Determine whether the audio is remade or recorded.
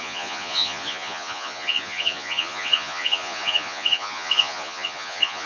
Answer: remade